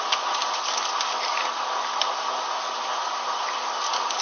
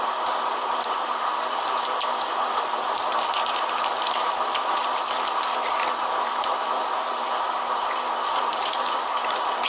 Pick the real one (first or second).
first